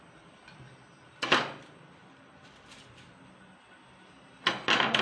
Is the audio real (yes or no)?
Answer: yes